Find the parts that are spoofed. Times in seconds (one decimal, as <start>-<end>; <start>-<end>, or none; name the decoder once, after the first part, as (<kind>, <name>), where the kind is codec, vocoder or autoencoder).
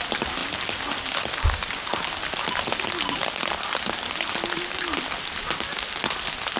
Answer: none